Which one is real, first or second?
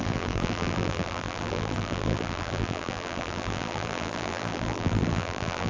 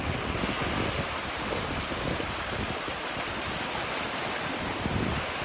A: second